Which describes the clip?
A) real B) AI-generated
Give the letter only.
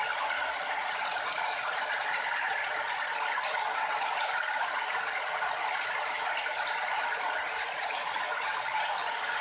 A